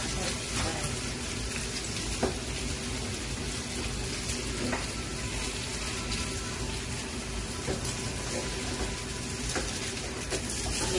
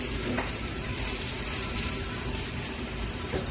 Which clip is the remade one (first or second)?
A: second